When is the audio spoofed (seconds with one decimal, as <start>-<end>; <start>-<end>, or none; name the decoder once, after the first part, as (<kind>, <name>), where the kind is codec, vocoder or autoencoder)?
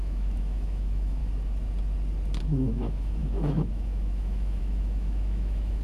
0.0-1.2 (autoencoder, DAC-VAE); 2.4-5.8